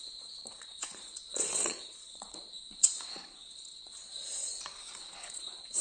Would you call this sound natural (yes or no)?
no